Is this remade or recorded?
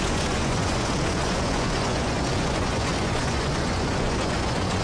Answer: remade